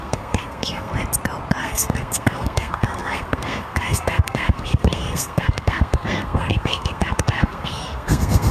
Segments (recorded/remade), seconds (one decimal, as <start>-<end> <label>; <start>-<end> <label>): 0.0-0.9 remade; 0.9-1.6 recorded; 1.6-8.5 remade